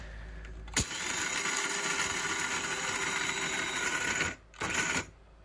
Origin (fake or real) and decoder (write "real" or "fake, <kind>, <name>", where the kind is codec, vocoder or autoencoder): real